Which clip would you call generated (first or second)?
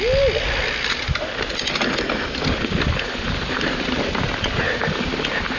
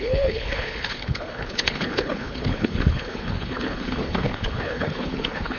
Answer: second